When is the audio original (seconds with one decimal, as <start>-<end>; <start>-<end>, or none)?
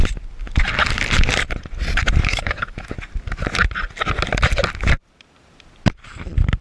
0.0-2.2; 2.9-6.6